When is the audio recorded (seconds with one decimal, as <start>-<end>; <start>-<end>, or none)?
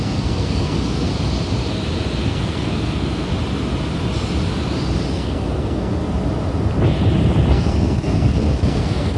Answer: 1.1-2.2; 3.3-5.1; 6.0-7.5